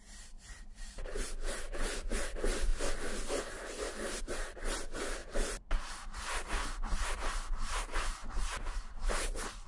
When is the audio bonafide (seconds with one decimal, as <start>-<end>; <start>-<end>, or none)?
2.7-4.2